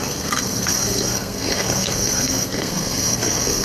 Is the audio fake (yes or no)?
yes